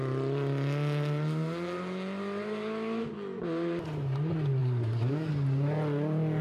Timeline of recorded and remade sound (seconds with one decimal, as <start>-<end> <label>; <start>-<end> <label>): 0.0-4.6 recorded; 4.6-5.3 remade; 5.3-6.4 recorded